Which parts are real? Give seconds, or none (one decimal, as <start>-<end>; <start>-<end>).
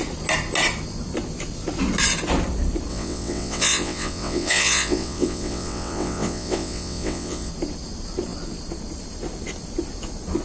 0.0-2.9; 7.5-10.4